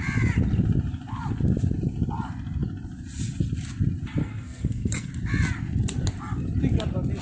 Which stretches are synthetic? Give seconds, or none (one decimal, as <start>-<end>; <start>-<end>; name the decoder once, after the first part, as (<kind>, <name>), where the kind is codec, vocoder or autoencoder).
4.2-5.1 (codec, SNAC)